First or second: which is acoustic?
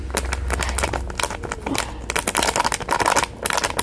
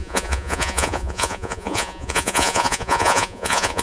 first